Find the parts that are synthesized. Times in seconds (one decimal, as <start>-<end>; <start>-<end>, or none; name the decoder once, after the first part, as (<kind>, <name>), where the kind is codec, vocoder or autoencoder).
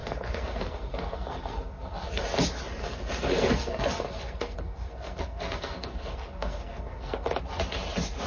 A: 0.0-2.2 (codec, SNAC); 2.8-7.4